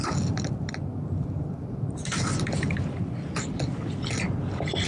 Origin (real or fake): real